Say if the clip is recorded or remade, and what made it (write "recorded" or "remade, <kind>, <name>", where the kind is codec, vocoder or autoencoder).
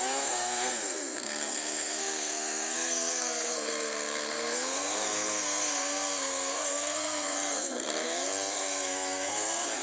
remade, codec, SNAC